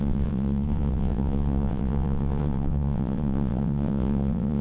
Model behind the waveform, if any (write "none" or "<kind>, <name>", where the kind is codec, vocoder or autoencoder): vocoder, WaveNeXt